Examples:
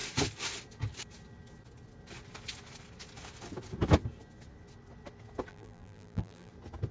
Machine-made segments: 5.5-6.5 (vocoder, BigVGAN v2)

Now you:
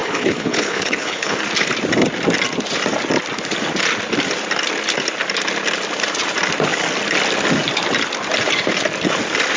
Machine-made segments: 0.0-1.4 (codec, HILCodec)

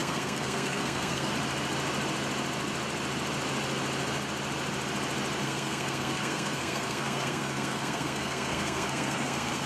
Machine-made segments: 0.0-1.3 (codec, SNAC); 5.4-9.7

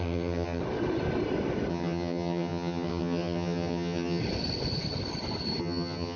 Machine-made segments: 0.0-0.6 (vocoder, HiFi-GAN); 1.7-4.2; 5.6-6.2

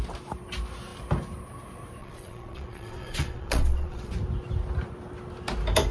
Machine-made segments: 2.0-4.1 (vocoder, WaveNeXt)

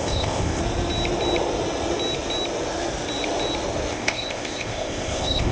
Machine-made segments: 0.0-0.6 (codec, ZipCodec); 3.9-5.5

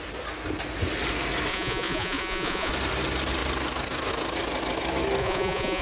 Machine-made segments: 1.5-2.7 (vocoder, Vocos); 5.2-5.8